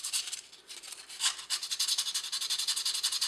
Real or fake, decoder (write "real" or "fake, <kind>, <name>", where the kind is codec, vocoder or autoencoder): real